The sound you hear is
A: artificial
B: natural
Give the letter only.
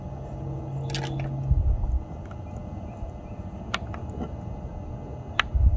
B